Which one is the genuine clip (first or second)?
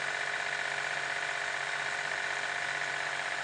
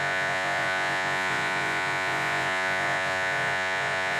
first